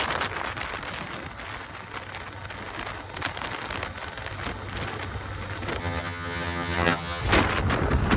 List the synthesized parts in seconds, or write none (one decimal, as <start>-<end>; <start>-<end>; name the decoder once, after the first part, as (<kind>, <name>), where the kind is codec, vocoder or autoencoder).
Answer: 5.8-7.2 (vocoder, HiFi-GAN)